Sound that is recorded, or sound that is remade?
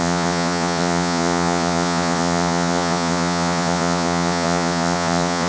remade